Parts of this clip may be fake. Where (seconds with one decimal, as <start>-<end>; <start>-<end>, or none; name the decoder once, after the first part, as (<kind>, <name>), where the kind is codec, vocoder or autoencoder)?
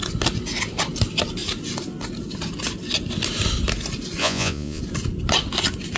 4.2-4.8 (vocoder, Vocos)